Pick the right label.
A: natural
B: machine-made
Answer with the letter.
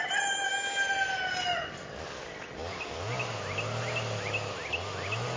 A